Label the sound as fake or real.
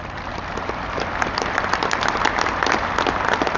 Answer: real